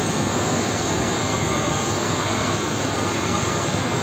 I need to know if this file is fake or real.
fake